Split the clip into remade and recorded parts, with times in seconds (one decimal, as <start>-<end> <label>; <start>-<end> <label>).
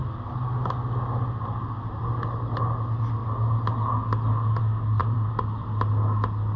0.0-5.0 recorded; 5.0-5.7 remade; 5.7-6.6 recorded